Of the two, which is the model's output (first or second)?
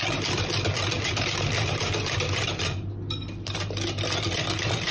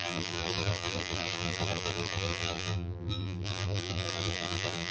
second